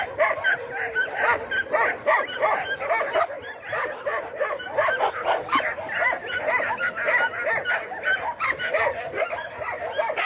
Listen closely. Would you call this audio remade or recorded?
recorded